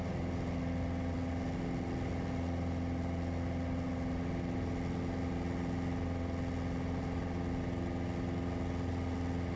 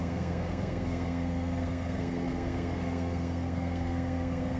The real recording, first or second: first